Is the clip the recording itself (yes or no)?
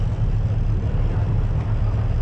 yes